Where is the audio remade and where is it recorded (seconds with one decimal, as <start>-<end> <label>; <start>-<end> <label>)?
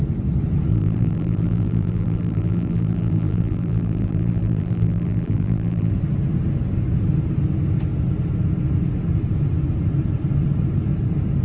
0.0-0.7 recorded; 0.7-5.9 remade; 5.9-11.4 recorded